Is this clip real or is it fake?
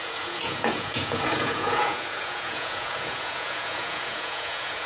fake